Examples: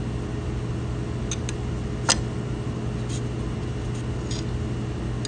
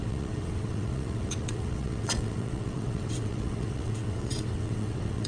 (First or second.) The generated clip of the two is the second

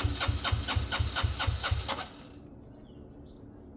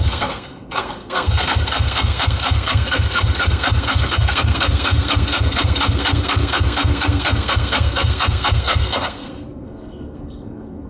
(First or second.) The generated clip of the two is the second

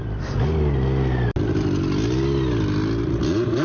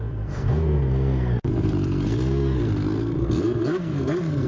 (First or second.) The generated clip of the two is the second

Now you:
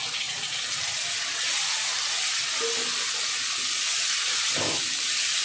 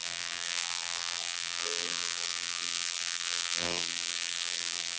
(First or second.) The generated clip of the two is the second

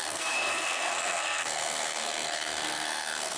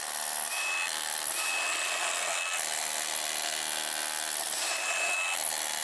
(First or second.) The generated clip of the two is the first